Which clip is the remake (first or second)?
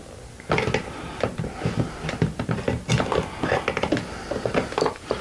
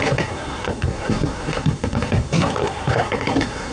second